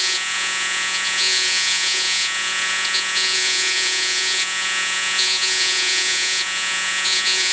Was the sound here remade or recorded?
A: remade